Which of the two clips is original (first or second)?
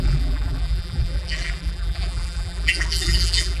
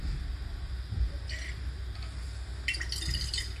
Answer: second